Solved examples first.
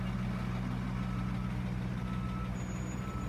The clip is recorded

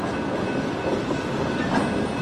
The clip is recorded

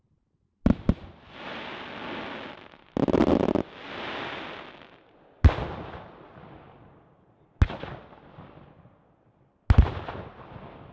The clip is recorded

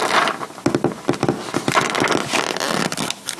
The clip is recorded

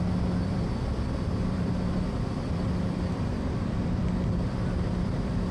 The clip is remade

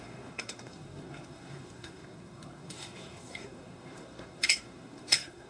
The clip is remade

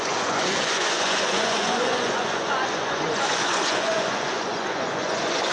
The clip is remade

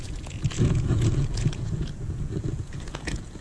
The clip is remade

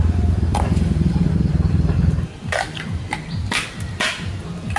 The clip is remade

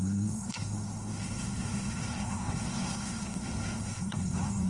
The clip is remade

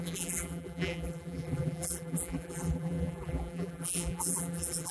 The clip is remade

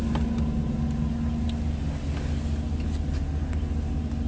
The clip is recorded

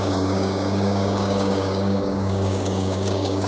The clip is remade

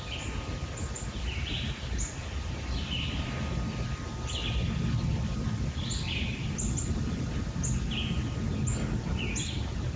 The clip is recorded